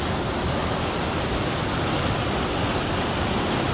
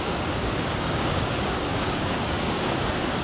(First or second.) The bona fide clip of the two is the first